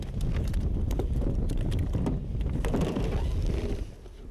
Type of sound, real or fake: real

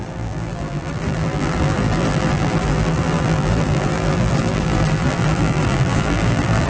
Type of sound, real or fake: fake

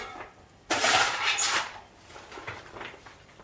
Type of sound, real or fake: fake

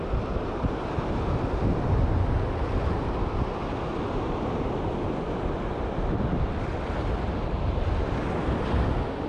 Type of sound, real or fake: real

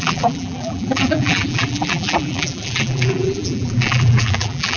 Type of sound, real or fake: fake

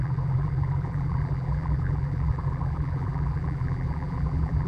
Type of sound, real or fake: fake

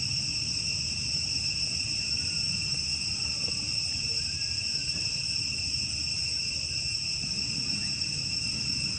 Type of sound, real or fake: fake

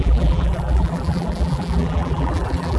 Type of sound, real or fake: fake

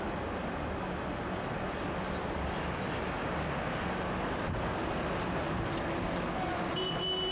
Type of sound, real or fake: real